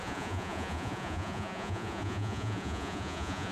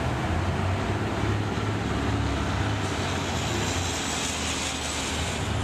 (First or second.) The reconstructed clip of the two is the first